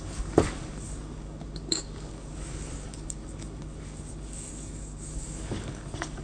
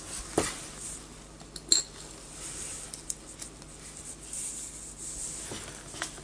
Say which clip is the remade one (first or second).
first